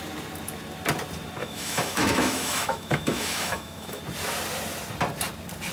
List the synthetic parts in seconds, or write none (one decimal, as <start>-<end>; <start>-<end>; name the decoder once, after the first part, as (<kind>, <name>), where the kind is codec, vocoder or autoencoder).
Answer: 1.4-4.0 (autoencoder, DAC-VAE)